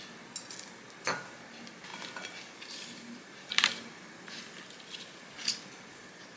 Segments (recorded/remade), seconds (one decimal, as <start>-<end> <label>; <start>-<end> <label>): 0.0-1.9 recorded; 1.9-4.4 remade; 4.4-6.4 recorded